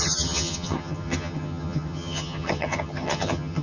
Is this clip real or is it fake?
fake